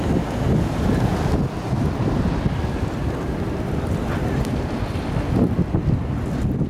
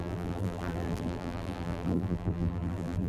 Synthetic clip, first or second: second